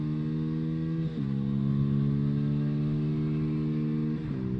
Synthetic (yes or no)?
no